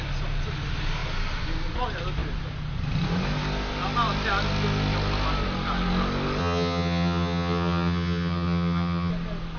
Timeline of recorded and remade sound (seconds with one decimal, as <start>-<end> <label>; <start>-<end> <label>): 0.0-6.4 recorded; 6.4-9.1 remade; 9.1-9.6 recorded